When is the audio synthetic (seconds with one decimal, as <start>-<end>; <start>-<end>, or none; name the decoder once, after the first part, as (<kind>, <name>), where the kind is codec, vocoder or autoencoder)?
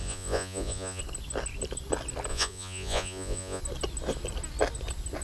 0.0-1.0 (vocoder, Vocos); 2.3-3.6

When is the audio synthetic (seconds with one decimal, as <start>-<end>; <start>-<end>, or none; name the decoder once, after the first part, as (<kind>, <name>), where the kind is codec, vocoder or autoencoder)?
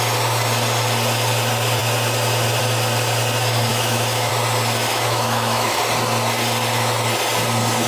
3.7-4.3 (autoencoder, DAC-VAE); 4.9-5.8